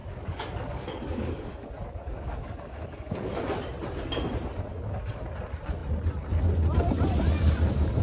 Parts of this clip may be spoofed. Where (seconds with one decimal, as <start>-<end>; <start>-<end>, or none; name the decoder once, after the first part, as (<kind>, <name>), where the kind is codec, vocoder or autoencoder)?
0.0-3.4 (codec, DAC); 4.7-5.3